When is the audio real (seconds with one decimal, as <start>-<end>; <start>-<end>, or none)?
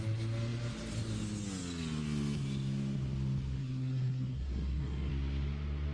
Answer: 0.0-3.6; 5.1-5.9